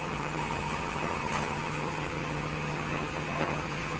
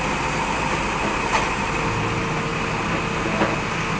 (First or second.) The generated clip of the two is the first